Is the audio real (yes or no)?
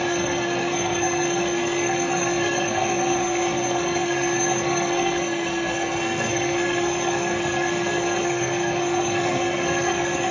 no